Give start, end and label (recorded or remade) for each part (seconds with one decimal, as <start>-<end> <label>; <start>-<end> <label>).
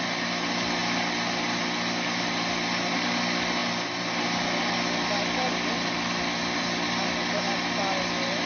0.0-8.5 recorded